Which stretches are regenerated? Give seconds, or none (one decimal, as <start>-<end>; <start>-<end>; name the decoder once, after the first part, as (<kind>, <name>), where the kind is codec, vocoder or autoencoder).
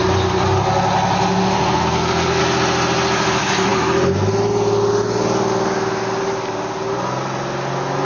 1.8-2.4 (codec, SNAC)